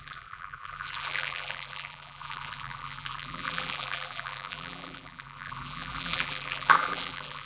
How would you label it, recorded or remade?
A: remade